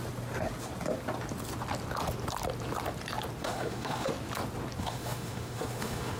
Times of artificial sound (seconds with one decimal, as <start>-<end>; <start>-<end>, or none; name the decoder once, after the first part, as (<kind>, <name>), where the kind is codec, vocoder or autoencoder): 3.4-4.1 (autoencoder, DAC-VAE); 4.8-6.2